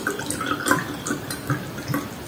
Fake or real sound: real